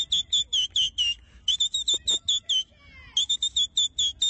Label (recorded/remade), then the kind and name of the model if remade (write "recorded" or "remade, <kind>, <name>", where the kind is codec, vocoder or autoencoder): recorded